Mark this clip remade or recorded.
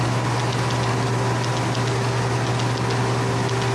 recorded